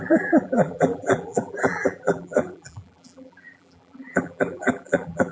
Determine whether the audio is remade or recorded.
remade